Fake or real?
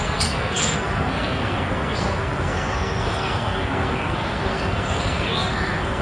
fake